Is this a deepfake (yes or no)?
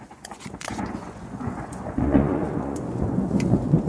yes